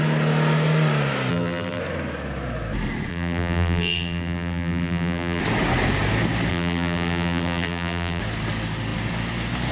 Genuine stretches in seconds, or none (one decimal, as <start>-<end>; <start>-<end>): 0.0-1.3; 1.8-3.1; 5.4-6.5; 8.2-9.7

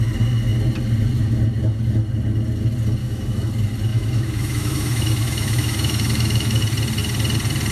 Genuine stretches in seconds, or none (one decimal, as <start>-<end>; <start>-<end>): 0.0-3.0; 3.5-3.9; 6.6-7.7

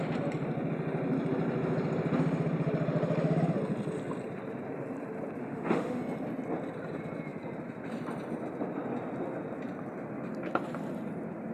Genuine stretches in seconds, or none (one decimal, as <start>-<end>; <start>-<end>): 0.0-5.4; 6.0-11.5